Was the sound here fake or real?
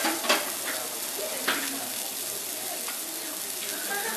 real